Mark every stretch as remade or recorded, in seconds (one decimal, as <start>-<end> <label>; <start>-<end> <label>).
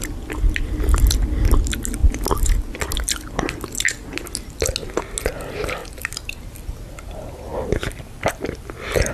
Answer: 0.0-5.8 recorded; 5.8-6.4 remade; 6.4-7.5 recorded; 7.5-9.1 remade